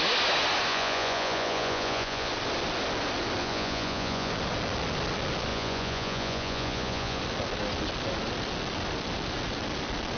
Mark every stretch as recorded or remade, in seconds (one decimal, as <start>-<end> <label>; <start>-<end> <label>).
0.0-0.7 recorded; 0.7-2.3 remade; 2.3-3.4 recorded; 3.4-4.3 remade; 4.3-5.5 recorded; 5.5-7.2 remade; 7.2-10.2 recorded